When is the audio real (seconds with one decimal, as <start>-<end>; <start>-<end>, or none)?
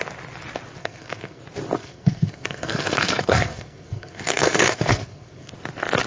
0.0-0.8; 1.4-1.8; 5.5-6.1